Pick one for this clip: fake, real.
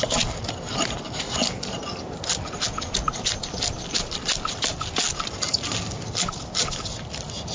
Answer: real